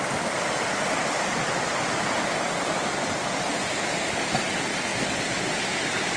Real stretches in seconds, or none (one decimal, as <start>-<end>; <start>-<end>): 0.0-6.2